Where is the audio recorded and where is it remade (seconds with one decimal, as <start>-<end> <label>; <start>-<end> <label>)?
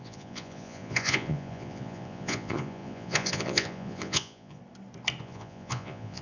0.0-4.6 remade; 4.6-5.2 recorded; 5.2-6.2 remade